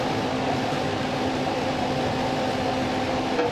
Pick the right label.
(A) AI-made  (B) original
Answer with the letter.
B